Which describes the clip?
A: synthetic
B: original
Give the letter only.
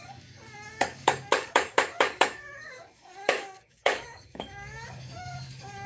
A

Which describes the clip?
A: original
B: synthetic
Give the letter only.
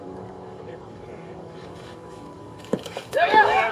B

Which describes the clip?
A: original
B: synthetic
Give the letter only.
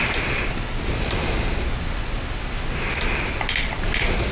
A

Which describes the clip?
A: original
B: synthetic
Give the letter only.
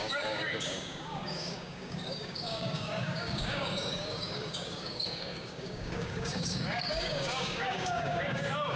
B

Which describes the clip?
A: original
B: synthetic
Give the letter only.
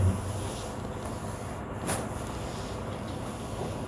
A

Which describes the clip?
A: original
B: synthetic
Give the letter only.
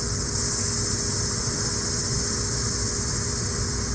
A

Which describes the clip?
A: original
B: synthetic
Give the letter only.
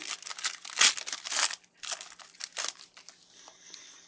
A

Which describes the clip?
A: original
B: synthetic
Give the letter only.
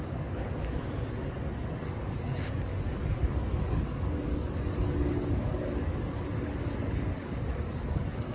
B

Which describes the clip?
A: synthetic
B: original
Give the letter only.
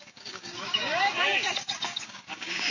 A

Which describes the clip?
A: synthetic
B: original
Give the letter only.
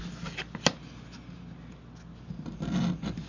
B